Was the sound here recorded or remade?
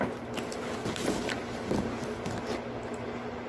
recorded